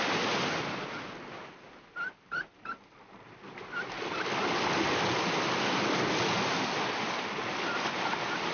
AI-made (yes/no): no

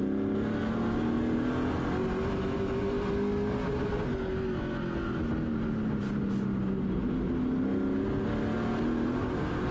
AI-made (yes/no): no